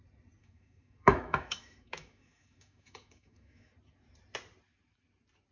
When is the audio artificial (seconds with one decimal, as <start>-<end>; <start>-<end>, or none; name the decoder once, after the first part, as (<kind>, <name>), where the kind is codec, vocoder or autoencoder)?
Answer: 0.4-3.7 (autoencoder, DAC-VAE)